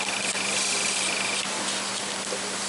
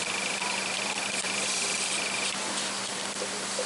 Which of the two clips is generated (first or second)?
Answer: second